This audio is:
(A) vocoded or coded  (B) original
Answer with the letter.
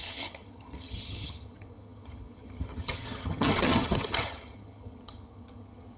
A